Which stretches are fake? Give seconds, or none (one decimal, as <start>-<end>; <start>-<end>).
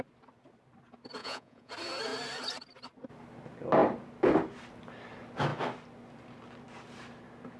1.2-1.7